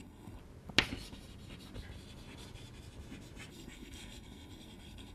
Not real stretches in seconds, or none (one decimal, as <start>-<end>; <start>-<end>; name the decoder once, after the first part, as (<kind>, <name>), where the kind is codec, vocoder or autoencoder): 0.0-0.4 (codec, SNAC); 3.5-5.1